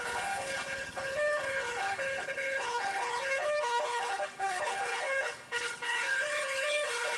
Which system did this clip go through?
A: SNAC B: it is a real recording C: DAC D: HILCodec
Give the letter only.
D